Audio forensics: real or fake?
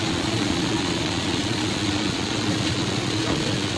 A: fake